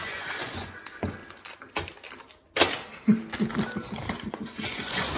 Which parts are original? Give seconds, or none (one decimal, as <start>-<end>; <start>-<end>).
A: 1.2-4.3